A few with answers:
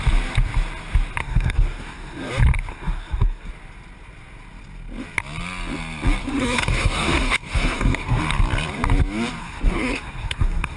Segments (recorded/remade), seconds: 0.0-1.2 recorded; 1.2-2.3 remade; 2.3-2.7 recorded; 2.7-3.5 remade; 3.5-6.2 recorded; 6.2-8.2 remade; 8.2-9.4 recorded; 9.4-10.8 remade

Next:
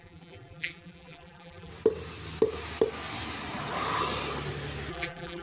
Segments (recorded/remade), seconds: 0.0-1.7 remade; 1.7-4.9 recorded; 4.9-5.4 remade